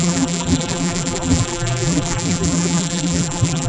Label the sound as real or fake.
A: fake